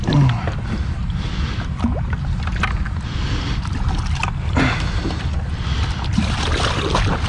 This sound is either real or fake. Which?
real